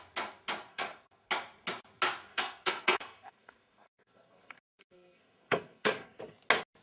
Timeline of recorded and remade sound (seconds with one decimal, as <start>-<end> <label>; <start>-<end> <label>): 0.0-0.7 recorded; 0.7-1.3 remade; 1.3-2.3 recorded; 2.3-6.2 remade; 6.2-6.8 recorded